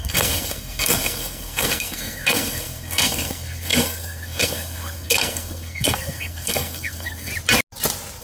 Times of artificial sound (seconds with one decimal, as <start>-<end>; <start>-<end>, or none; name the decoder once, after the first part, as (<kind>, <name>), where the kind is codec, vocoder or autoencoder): 0.0-7.3 (codec, SNAC)